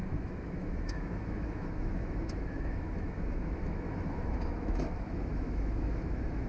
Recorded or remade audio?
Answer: remade